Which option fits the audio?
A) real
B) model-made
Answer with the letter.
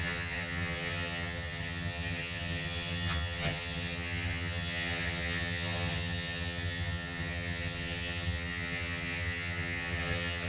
B